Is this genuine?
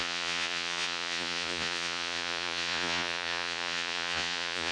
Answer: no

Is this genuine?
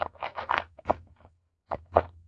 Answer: no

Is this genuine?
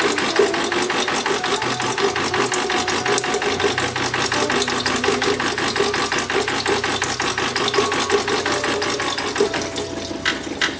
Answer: yes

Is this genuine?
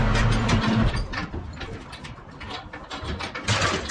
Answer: yes